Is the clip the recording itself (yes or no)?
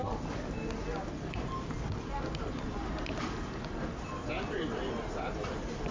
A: yes